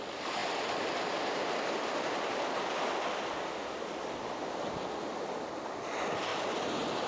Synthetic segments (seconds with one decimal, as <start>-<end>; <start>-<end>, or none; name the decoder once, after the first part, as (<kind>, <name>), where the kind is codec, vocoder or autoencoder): none